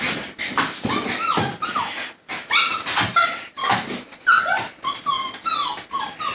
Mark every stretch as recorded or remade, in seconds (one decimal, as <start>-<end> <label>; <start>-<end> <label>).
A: 0.0-3.6 recorded; 3.6-4.4 remade; 4.4-6.3 recorded